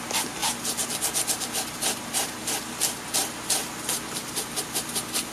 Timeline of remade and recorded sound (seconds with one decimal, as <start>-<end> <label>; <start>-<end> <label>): 0.0-5.3 recorded